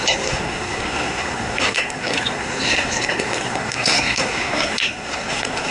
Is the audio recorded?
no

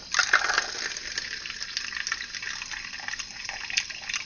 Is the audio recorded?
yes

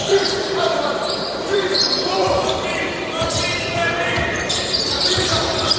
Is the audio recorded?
no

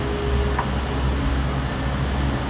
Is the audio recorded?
yes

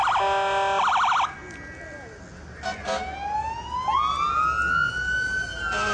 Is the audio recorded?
yes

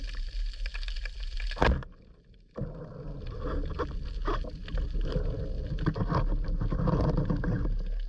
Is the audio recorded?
yes